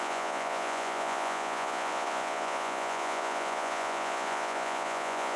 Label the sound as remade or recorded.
remade